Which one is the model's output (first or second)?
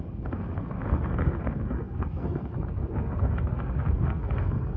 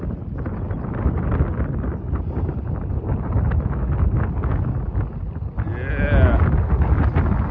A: first